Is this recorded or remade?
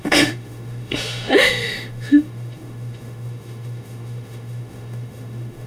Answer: remade